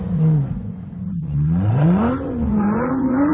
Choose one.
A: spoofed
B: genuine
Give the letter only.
A